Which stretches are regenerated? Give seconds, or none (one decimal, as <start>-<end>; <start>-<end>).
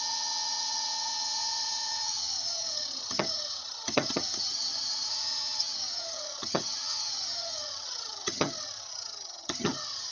0.0-10.1